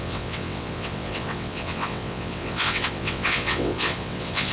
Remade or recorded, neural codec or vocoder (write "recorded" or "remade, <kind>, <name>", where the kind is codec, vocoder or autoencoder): remade, vocoder, WaveNeXt